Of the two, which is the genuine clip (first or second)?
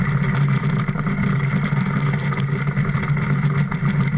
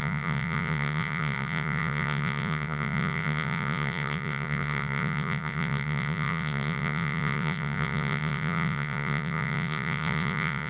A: first